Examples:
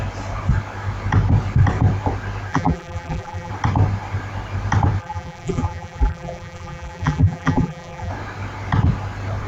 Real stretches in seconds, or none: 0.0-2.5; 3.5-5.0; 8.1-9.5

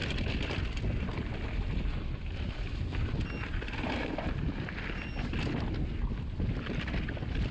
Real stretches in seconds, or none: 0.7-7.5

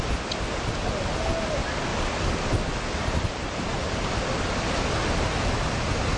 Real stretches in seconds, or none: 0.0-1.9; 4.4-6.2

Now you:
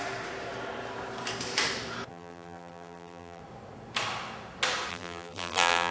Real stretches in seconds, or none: 0.0-2.1; 3.4-4.9

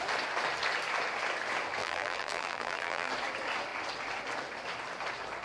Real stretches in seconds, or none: 0.0-1.8; 3.1-5.4